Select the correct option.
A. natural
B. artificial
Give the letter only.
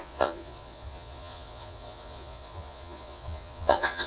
B